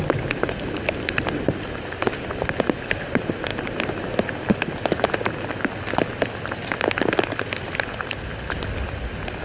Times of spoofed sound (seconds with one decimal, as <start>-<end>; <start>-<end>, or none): none